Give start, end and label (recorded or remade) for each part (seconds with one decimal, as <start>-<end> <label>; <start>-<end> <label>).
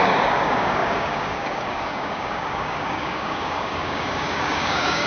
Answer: 0.0-5.1 remade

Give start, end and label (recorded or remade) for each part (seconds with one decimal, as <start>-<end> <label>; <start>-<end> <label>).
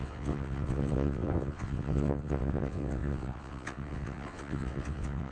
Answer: 0.0-5.3 remade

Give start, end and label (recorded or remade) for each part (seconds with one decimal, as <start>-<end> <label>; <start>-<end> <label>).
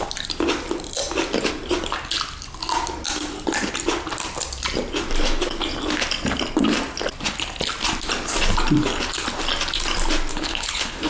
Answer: 0.0-10.3 recorded; 10.3-11.1 remade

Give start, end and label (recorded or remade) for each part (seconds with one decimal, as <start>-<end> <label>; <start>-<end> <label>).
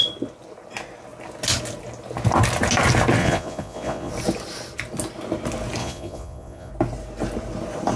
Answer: 0.0-3.2 recorded; 3.2-4.1 remade; 4.1-5.8 recorded; 5.8-6.7 remade; 6.7-8.0 recorded